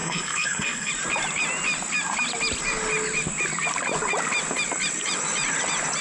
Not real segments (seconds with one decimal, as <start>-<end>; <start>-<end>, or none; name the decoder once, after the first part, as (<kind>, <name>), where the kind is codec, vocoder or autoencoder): 0.0-0.9 (codec, SNAC)